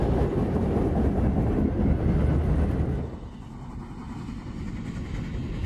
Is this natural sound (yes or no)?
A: yes